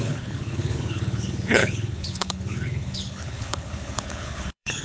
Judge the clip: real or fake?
fake